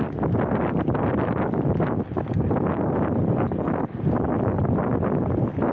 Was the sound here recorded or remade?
recorded